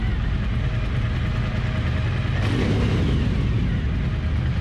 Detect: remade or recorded recorded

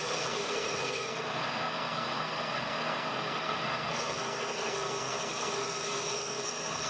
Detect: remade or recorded remade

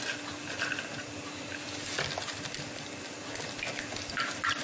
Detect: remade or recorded recorded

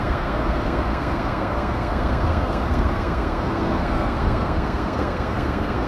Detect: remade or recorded remade